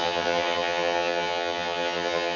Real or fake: fake